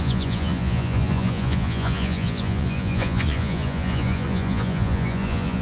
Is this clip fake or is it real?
fake